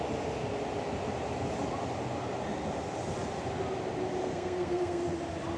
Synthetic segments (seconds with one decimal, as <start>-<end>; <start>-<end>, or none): 4.2-5.0